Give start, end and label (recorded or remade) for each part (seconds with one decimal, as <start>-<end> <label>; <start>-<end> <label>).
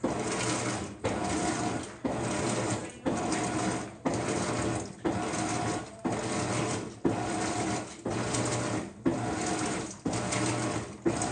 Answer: 0.0-11.3 recorded